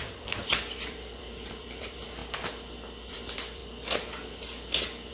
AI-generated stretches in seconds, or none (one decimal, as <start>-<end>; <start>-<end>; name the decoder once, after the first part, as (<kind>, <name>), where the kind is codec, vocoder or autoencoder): 0.0-2.2 (vocoder, BigVGAN v2); 3.1-3.6

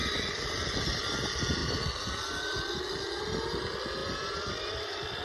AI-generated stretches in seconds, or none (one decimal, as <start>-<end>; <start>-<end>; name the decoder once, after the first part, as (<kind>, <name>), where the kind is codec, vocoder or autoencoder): 4.0-4.7 (vocoder, BigVGAN v2)

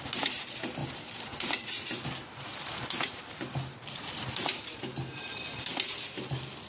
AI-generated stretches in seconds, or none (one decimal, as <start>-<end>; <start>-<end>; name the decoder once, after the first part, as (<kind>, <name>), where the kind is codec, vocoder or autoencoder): 0.8-4.8 (vocoder, BigVGAN v2)

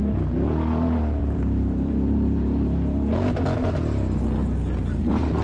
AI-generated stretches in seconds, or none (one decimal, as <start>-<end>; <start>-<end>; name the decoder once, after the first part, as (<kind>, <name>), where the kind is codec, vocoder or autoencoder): 1.2-3.3 (vocoder, BigVGAN v2)

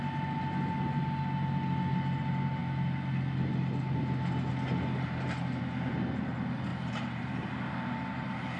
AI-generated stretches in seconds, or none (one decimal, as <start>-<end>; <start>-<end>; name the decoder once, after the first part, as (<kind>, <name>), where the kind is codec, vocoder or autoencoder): 6.7-7.5 (vocoder, BigVGAN v2)

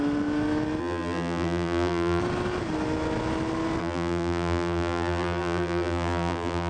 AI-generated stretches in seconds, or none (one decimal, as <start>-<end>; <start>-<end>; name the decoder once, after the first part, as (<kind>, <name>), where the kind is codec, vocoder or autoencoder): 0.8-2.2 (vocoder, BigVGAN v2); 3.8-6.7

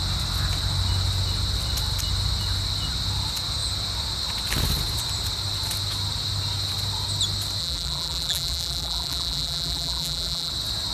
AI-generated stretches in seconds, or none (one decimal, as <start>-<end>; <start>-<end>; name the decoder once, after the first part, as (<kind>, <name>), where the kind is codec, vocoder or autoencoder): 7.6-10.5 (vocoder, BigVGAN v2)